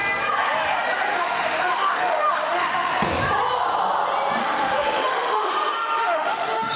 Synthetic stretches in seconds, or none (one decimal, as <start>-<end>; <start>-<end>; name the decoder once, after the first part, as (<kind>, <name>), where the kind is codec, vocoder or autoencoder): 1.1-2.9 (autoencoder, DAC-VAE); 4.4-5.5; 6.0-6.8